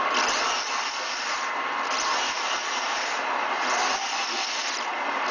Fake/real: real